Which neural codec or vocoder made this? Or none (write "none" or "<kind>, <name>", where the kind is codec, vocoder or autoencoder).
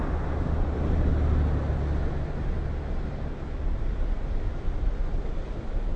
none